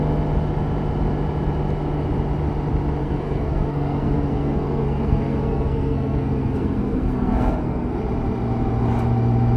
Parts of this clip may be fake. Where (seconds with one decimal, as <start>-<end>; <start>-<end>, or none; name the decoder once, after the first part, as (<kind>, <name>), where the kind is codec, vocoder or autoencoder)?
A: 3.0-8.0 (codec, SNAC)